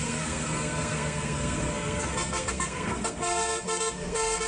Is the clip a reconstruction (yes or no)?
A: yes